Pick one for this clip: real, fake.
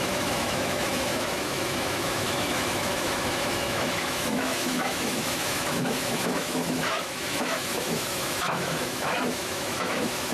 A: fake